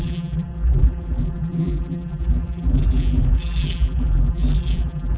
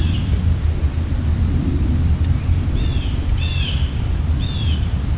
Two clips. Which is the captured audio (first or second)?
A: second